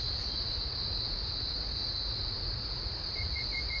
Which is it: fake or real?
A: fake